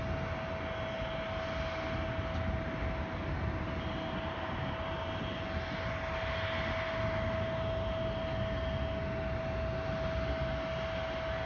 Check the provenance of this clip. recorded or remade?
recorded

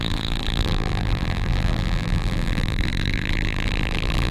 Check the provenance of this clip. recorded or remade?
remade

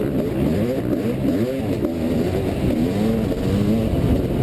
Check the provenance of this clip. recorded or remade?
recorded